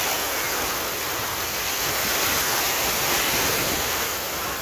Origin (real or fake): real